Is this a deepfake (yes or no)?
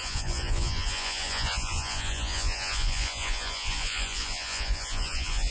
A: yes